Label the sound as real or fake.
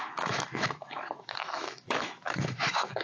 fake